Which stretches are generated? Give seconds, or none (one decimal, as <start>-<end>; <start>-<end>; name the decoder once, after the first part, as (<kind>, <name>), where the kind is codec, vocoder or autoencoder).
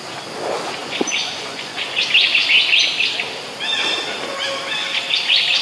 0.8-2.0 (vocoder, Vocos)